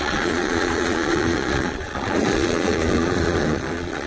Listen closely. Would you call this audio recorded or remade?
remade